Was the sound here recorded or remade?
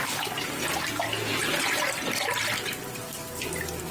recorded